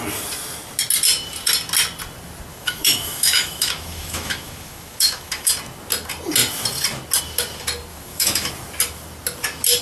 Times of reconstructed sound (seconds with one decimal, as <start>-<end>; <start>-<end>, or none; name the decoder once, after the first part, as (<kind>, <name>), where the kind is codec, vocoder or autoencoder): 2.5-5.5 (autoencoder, DAC-VAE); 7.9-8.5